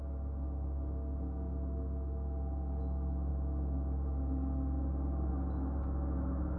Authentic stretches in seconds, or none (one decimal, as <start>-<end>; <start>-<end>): 0.0-6.6